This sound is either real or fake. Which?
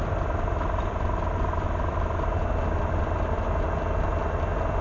real